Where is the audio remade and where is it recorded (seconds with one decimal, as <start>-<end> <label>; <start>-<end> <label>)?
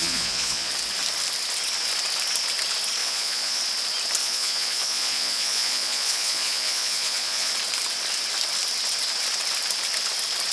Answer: 0.0-0.7 remade; 0.7-3.0 recorded; 3.0-3.6 remade; 3.6-4.2 recorded; 4.2-7.5 remade; 7.5-10.5 recorded